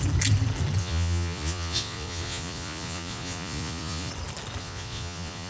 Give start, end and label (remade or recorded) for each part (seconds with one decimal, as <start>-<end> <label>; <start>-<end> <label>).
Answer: 0.0-0.8 recorded; 0.8-4.1 remade; 4.1-4.6 recorded; 4.6-5.5 remade